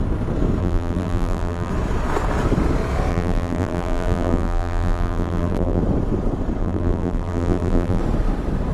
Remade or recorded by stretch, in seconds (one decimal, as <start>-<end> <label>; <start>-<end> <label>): 0.0-0.6 recorded; 0.6-1.7 remade; 1.7-3.1 recorded; 3.1-5.8 remade; 5.8-6.6 recorded; 6.6-8.0 remade; 8.0-8.7 recorded